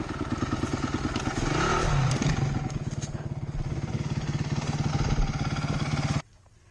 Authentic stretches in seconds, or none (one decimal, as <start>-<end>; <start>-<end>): 0.0-6.7